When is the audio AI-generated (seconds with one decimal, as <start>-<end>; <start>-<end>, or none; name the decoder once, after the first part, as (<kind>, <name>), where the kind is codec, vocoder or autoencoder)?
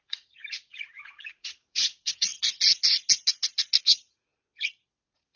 0.0-2.3 (vocoder, Vocos); 3.8-4.3; 4.9-5.4